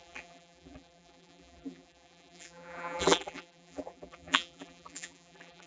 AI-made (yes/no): yes